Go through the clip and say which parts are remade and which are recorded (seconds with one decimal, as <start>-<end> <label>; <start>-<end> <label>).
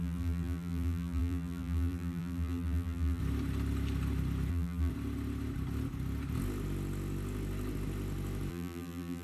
0.0-3.2 remade; 3.2-4.5 recorded; 4.5-4.9 remade; 4.9-8.5 recorded; 8.5-9.2 remade